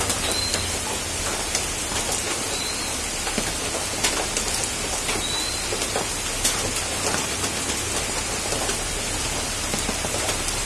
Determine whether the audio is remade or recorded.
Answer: recorded